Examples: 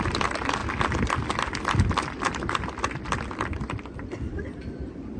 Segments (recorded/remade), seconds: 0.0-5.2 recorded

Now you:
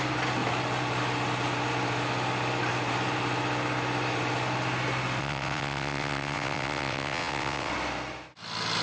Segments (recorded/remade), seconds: 0.0-5.2 recorded; 5.2-7.7 remade; 7.7-8.8 recorded

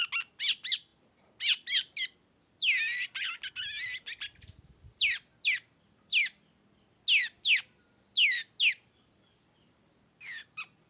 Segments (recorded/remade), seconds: 0.0-10.9 recorded

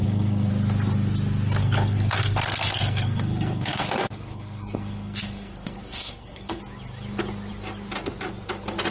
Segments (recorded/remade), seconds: 0.0-0.5 remade; 0.5-1.6 recorded; 1.6-6.6 remade; 6.6-8.9 recorded